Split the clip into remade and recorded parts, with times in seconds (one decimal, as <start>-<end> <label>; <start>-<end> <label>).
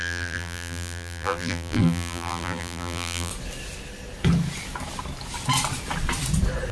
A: 0.0-3.3 remade; 3.3-6.7 recorded